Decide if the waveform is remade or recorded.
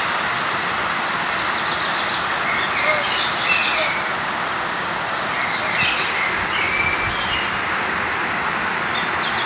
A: recorded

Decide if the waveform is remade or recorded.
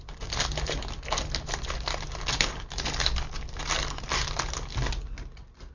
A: recorded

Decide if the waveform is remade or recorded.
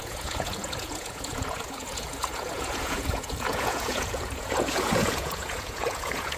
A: remade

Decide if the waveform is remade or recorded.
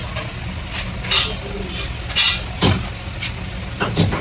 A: recorded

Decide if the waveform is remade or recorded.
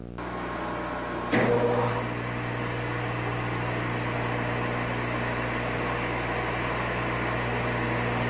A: recorded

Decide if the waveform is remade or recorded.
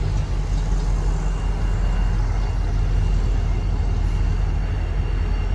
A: recorded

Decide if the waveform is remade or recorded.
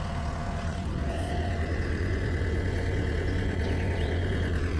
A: remade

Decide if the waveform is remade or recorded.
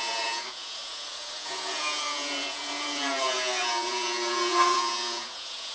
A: remade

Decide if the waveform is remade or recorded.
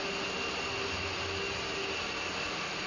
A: recorded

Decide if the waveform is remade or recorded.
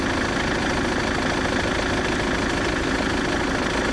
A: recorded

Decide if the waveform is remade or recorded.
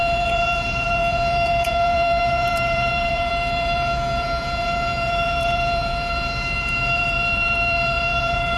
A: remade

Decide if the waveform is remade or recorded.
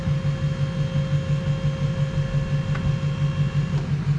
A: recorded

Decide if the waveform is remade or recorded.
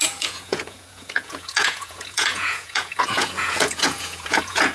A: remade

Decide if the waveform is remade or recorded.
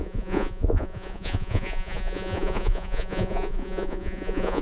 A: remade